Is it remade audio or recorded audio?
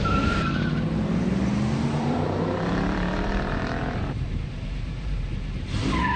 remade